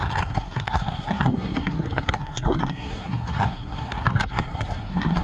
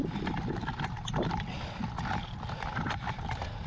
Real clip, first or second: second